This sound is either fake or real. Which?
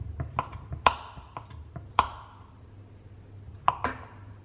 real